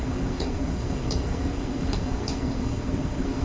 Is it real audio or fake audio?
fake